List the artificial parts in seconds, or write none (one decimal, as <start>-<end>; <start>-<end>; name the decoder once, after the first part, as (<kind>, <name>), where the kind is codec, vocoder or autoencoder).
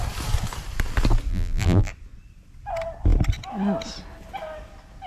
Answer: 1.3-1.9 (vocoder, BigVGAN v2)